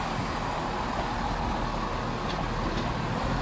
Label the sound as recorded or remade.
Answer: recorded